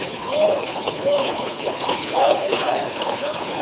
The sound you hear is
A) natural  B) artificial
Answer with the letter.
B